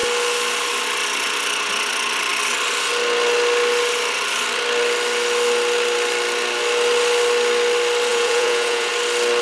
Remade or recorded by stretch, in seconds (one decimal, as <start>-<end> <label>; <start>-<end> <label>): 0.0-8.1 recorded; 8.1-8.9 remade; 8.9-9.4 recorded